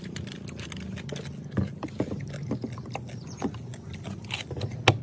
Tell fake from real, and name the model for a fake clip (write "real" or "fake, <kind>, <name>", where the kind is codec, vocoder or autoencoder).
real